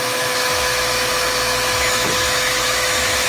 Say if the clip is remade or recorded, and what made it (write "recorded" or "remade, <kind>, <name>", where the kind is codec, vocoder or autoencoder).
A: remade, autoencoder, DAC-VAE